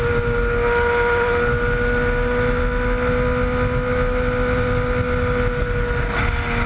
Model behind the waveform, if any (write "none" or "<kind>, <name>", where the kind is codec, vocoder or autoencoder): none